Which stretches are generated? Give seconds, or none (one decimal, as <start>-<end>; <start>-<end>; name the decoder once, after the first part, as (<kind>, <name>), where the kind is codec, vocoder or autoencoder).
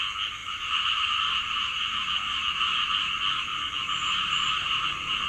0.4-2.9 (vocoder, BigVGAN v2); 3.5-4.8